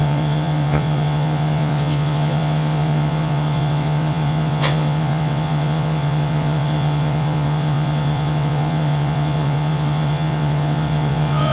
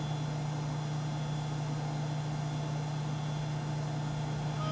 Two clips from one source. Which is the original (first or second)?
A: second